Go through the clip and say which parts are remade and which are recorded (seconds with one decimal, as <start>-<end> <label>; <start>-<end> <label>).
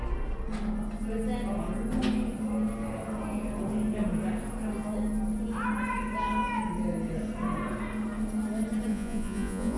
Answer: 0.0-8.9 recorded; 8.9-9.8 remade